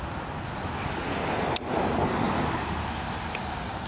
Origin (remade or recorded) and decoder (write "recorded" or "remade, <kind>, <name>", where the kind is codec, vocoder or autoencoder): recorded